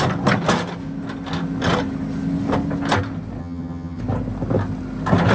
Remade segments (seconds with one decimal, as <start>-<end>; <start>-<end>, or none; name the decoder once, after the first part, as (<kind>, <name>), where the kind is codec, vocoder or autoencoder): 3.4-4.0 (vocoder, HiFi-GAN)